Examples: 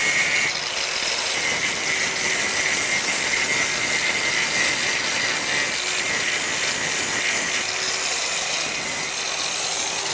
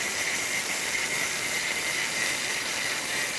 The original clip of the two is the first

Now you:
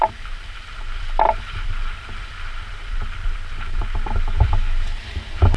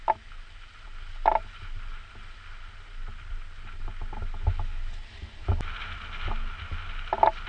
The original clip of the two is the second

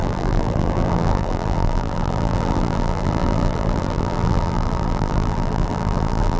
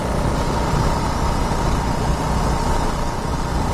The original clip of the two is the second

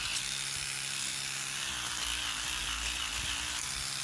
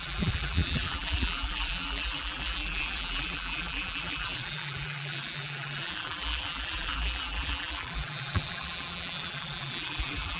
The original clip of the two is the first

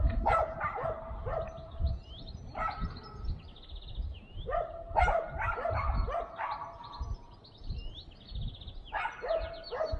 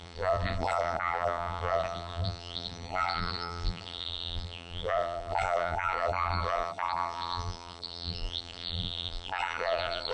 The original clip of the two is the first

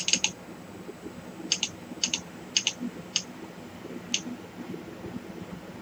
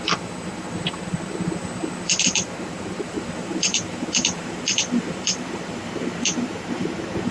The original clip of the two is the first